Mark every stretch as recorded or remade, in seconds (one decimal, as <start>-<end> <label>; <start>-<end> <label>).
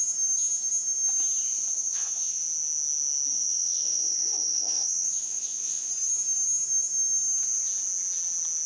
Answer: 0.0-1.7 recorded; 1.7-2.4 remade; 2.4-3.3 recorded; 3.3-5.9 remade; 5.9-8.7 recorded